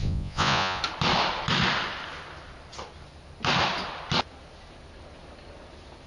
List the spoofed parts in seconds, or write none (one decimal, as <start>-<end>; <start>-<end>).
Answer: 0.0-0.8